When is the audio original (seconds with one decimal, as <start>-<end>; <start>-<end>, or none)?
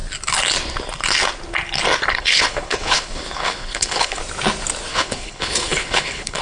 0.0-2.1; 4.2-4.9